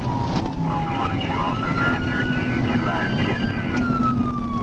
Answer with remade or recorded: recorded